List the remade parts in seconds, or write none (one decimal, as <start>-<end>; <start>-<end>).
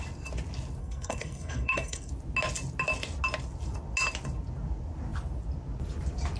0.8-2.1